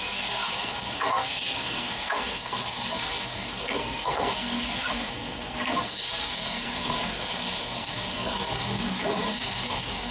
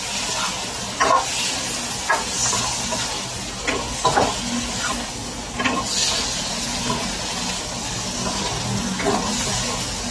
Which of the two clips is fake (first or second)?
first